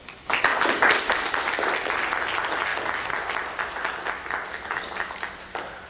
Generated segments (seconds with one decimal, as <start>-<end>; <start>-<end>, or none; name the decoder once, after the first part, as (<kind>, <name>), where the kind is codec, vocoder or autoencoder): none